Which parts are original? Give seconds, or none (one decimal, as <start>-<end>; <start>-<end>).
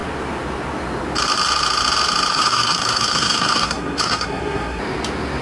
0.0-2.3; 4.8-5.4